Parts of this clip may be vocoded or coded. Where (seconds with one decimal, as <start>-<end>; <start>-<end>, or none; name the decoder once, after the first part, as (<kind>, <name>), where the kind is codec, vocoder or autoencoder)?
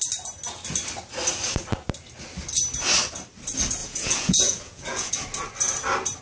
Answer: 3.8-5.1 (vocoder, Vocos)